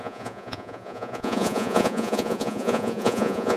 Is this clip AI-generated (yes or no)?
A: yes